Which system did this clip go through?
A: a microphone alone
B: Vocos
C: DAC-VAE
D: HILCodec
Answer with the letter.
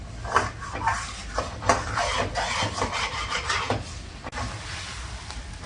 A